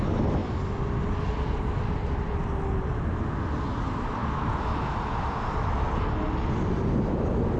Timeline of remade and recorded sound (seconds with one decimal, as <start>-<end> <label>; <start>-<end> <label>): 0.0-7.6 recorded